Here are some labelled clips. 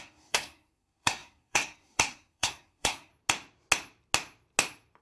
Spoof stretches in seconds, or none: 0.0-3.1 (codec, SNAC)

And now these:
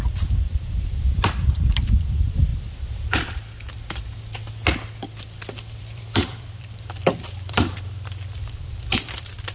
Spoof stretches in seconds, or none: 0.0-2.5 (vocoder, BigVGAN v2); 5.2-9.5